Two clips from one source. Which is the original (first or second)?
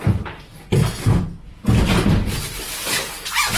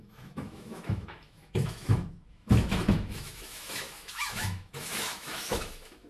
first